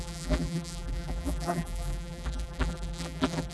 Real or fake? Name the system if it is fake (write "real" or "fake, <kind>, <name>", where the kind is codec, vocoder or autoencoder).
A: fake, vocoder, BigVGAN v2